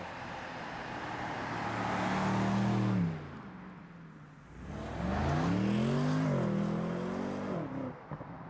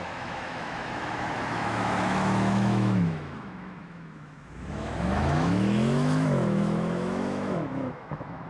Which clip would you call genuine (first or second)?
first